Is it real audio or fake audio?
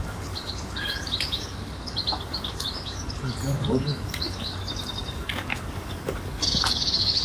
fake